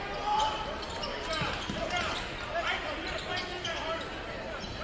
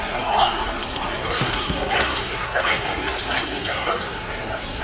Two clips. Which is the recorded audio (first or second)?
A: first